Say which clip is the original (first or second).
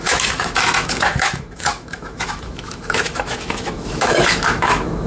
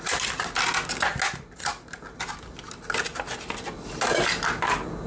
second